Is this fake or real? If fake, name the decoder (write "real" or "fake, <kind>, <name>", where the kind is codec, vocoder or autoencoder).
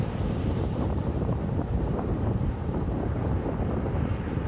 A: fake, vocoder, BigVGAN v2